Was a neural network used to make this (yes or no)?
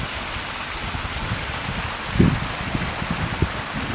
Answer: no